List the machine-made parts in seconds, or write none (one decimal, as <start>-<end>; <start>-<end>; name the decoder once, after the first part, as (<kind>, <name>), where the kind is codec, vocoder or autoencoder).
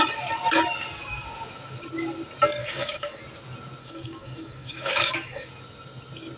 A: 2.6-3.2 (codec, DAC); 3.8-5.5